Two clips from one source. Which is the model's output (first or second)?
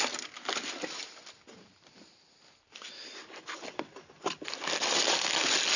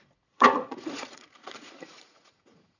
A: second